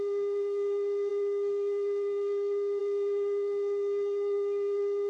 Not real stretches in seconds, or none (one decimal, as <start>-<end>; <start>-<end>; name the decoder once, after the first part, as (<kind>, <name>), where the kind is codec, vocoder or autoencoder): 0.0-5.1 (codec, SNAC)